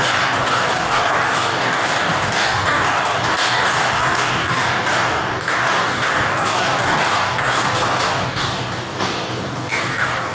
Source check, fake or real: fake